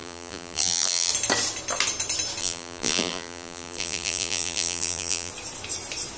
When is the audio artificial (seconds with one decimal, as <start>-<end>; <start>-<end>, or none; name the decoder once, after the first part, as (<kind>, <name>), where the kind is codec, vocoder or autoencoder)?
0.0-1.1 (vocoder, BigVGAN v2); 2.4-5.3

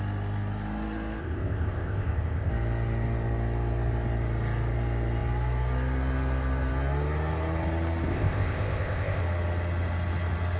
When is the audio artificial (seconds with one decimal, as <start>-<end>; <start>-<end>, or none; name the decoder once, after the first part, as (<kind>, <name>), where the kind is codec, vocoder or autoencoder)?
1.2-2.5 (codec, ZipCodec); 8.1-9.2

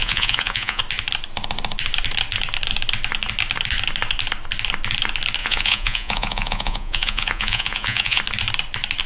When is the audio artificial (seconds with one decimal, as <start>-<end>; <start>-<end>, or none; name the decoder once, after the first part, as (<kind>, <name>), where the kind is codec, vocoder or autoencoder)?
0.0-0.8 (vocoder, Vocos); 5.4-8.2

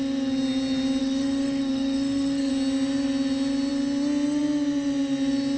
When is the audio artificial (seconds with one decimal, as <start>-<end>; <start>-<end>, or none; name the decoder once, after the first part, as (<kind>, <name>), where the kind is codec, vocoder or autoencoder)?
1.0-2.5 (codec, SNAC)

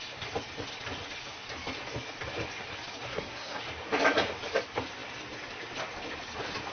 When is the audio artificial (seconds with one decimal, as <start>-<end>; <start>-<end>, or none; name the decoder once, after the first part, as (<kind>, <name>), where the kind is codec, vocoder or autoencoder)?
3.1-3.6 (codec, SNAC)

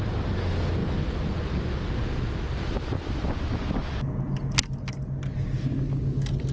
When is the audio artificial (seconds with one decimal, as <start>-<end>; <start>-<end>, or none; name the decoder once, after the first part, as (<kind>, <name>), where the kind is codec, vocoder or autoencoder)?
none

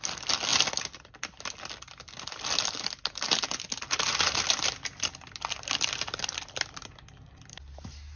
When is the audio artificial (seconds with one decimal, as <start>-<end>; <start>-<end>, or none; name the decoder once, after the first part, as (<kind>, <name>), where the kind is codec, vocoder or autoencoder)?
none